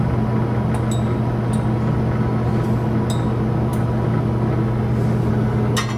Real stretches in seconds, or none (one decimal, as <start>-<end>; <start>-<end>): 0.0-6.0